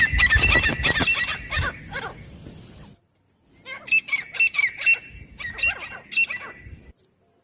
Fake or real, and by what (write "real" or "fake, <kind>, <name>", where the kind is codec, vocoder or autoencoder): real